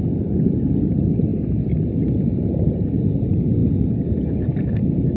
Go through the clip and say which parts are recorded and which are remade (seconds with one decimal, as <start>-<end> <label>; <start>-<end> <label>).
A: 0.0-5.2 recorded